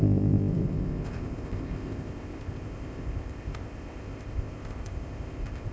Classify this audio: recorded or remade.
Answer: remade